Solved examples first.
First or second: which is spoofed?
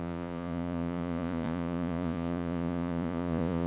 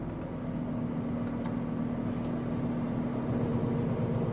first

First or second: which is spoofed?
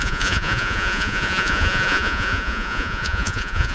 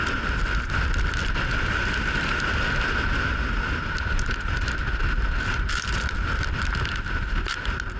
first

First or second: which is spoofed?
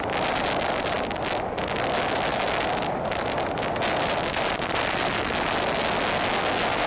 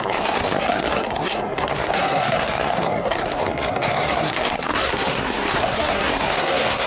second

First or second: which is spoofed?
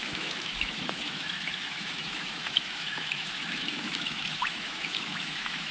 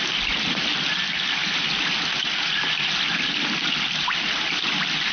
first